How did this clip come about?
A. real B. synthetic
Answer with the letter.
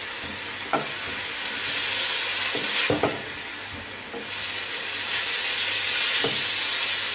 A